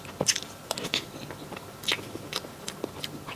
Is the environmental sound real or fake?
real